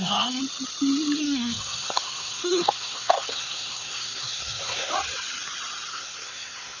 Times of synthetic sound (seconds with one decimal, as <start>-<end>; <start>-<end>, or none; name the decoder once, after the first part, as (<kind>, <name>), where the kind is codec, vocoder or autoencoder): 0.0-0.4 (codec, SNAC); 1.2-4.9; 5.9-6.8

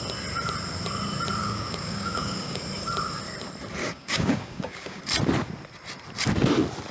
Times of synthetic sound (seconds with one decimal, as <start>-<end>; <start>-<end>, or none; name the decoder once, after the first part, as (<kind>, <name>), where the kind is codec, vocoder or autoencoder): 1.4-2.6 (codec, DAC); 3.8-5.0

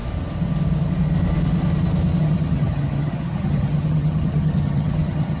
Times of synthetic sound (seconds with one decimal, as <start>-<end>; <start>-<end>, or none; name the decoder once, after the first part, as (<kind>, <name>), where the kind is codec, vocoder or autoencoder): 2.2-5.4 (vocoder, HiFi-GAN)

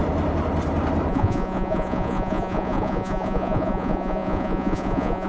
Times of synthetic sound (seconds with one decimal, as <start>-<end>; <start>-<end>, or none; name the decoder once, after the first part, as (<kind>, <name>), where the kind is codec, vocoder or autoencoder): 1.1-5.3 (vocoder, Vocos)